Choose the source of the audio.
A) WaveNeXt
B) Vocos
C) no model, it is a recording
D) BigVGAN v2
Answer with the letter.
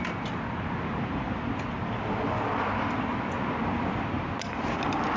C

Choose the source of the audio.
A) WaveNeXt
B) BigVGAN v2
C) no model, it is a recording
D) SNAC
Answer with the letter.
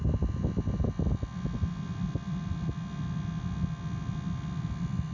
C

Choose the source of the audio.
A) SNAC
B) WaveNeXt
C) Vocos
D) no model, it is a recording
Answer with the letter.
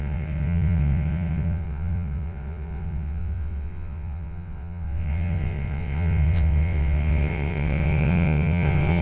B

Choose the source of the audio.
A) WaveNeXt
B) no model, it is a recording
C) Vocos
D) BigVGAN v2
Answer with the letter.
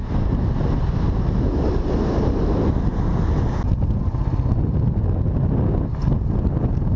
B